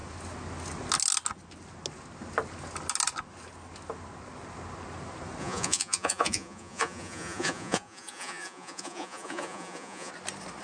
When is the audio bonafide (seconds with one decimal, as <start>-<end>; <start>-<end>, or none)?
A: 0.0-5.4; 10.1-10.6